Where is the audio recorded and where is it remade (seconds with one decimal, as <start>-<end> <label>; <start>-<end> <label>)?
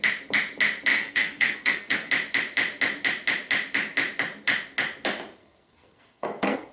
0.0-0.9 recorded; 0.9-2.1 remade; 2.1-5.4 recorded; 5.4-6.7 remade